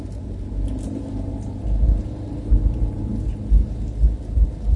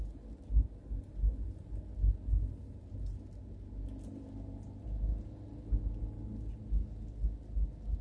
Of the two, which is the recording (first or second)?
second